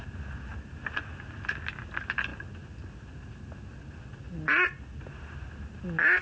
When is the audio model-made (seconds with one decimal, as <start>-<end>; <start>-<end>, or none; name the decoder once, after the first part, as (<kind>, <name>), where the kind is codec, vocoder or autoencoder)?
none